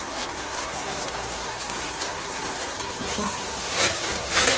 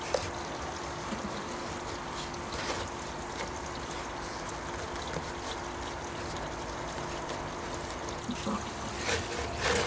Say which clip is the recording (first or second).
second